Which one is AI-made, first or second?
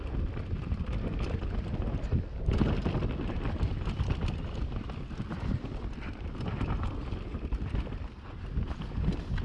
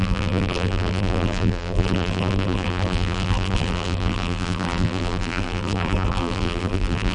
second